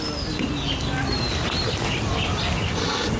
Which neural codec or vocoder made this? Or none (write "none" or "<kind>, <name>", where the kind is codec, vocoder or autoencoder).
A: none